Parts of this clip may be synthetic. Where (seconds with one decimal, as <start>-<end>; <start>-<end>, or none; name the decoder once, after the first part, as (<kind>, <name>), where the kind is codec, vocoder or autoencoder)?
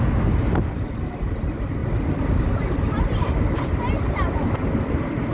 none